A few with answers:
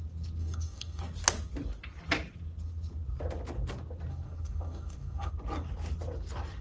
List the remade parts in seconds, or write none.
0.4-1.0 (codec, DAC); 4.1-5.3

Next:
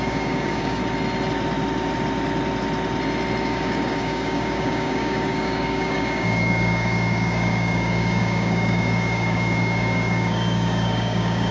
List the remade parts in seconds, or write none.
0.0-0.8 (codec, DAC); 3.4-11.5

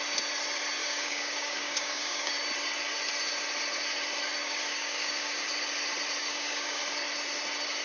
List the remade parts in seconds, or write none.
0.8-2.3 (codec, DAC); 4.4-5.3; 6.2-6.8

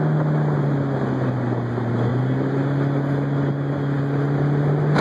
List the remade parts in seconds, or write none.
none

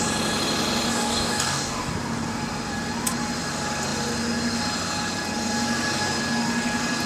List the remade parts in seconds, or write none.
0.9-1.9 (codec, DAC)